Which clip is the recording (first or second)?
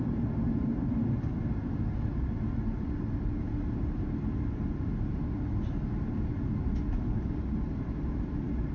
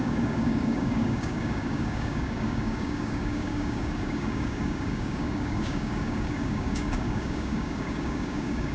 first